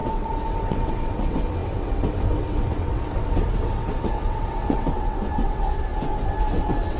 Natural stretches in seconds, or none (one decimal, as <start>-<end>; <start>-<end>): none